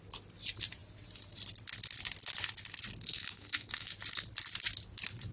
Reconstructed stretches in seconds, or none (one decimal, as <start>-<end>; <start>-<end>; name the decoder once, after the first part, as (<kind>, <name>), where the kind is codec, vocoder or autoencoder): 3.1-3.9 (autoencoder, DAC-VAE)